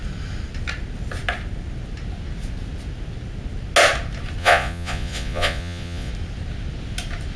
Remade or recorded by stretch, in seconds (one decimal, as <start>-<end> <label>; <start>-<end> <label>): 0.0-4.4 recorded; 4.4-6.1 remade; 6.1-7.4 recorded

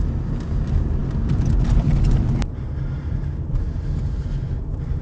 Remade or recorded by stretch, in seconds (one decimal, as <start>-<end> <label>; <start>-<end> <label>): 0.0-5.0 recorded

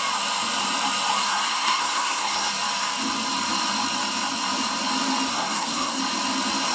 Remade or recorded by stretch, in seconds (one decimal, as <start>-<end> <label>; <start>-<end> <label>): 0.0-1.2 recorded; 1.2-2.5 remade; 2.5-5.3 recorded; 5.3-6.0 remade; 6.0-6.7 recorded

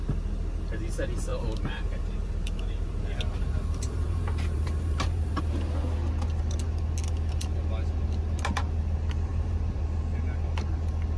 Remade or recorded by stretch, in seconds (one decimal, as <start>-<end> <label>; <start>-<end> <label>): 0.0-1.3 recorded; 1.3-5.4 remade; 5.4-9.3 recorded; 9.3-9.8 remade; 9.8-11.2 recorded

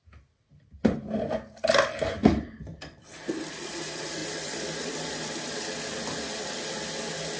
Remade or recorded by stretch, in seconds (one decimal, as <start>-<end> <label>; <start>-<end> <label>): 0.0-2.2 recorded; 2.2-3.5 remade; 3.5-4.2 recorded; 4.2-5.5 remade; 5.5-7.4 recorded

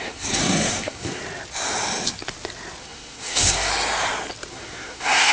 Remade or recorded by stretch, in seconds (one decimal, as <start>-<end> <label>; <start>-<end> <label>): 0.0-1.2 remade; 1.2-2.8 recorded; 2.8-3.7 remade; 3.7-4.5 recorded; 4.5-5.3 remade

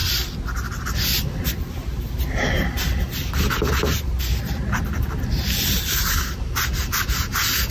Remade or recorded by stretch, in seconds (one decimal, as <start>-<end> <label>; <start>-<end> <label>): 0.0-7.7 recorded

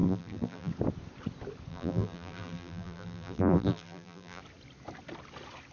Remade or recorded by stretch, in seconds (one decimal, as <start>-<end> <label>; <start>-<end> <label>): 0.0-0.7 remade; 0.7-1.7 recorded; 1.7-4.4 remade; 4.4-5.7 recorded